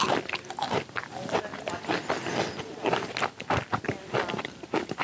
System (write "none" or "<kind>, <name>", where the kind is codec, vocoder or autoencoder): none